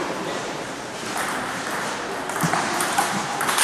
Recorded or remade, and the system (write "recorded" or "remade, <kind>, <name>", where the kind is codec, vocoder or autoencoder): remade, vocoder, BigVGAN v2